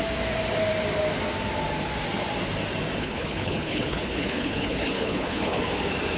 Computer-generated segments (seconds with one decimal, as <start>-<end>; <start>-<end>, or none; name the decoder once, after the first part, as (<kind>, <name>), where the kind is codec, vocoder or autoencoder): 3.0-5.6 (codec, HILCodec)